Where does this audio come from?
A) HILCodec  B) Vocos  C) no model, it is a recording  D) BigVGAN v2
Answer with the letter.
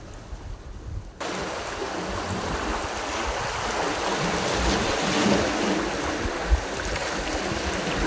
C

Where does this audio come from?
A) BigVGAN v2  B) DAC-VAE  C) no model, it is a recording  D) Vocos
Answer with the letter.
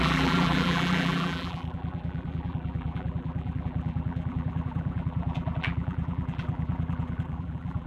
A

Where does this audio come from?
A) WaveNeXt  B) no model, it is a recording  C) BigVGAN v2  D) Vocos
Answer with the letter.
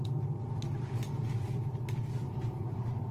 C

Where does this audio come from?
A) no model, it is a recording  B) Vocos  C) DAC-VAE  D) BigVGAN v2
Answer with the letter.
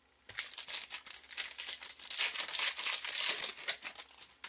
A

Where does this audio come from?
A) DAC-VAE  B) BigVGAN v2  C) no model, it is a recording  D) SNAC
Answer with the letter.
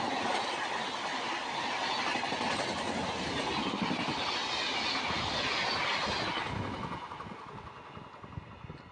C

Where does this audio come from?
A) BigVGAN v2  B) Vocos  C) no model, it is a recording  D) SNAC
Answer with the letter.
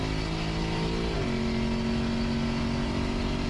C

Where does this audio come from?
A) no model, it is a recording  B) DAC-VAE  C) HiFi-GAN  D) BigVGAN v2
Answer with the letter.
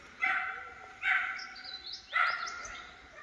A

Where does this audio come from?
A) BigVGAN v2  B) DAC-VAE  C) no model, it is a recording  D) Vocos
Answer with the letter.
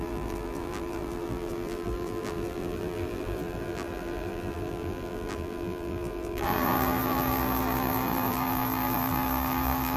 A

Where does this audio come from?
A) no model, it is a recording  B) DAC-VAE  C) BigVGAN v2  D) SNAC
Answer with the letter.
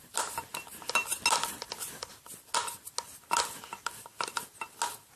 A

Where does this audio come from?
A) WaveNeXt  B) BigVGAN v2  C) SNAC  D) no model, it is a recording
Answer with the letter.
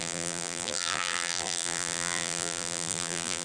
B